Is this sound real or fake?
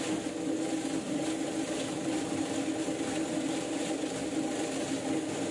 real